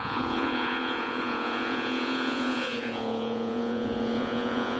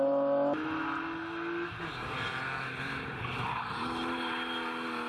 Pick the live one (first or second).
second